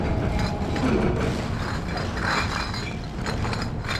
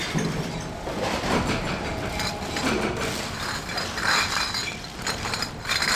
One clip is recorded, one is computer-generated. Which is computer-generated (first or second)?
second